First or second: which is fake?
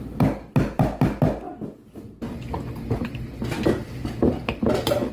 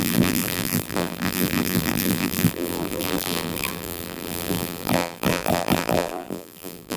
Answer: second